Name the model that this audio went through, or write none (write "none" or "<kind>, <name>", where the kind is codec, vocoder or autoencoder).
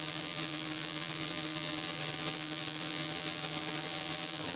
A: vocoder, BigVGAN v2